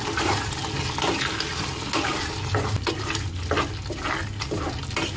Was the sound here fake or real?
real